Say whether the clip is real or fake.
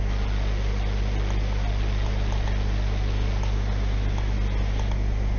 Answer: real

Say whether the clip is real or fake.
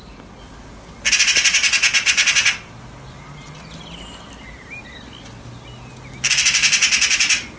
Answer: real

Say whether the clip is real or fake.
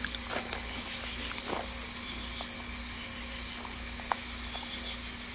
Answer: real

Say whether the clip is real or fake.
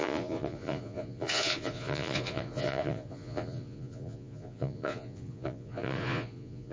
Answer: fake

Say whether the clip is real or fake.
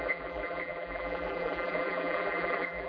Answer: fake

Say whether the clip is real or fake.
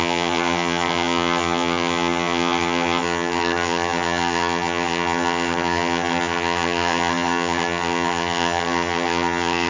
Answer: fake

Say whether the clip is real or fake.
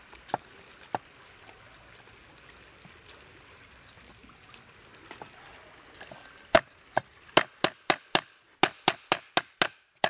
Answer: real